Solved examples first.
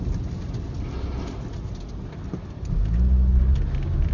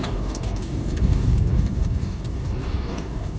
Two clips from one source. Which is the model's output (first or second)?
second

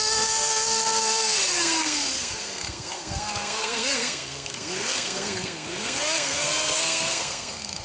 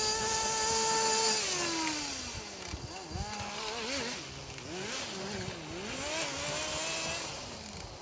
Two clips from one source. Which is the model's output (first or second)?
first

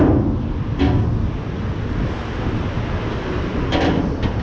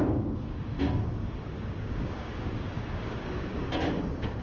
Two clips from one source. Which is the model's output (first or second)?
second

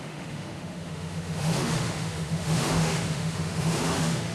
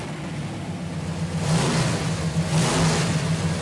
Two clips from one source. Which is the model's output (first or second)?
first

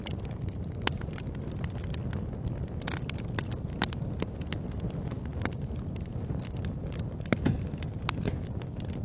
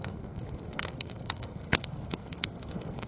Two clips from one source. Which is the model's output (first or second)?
second